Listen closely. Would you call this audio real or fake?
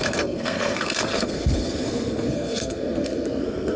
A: fake